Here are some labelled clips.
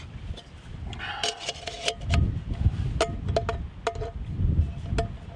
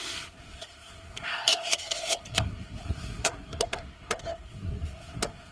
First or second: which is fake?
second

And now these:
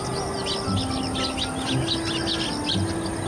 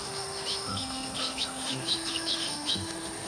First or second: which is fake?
second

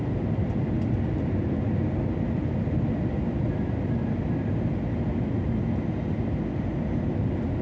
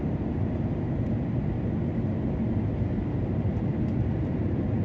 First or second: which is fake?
second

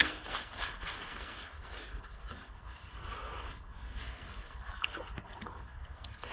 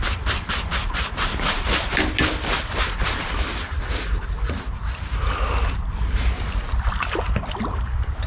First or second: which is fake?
first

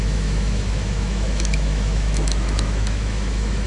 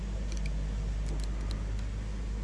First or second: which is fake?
first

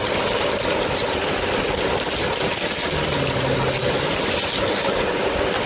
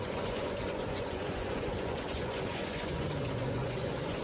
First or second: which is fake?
second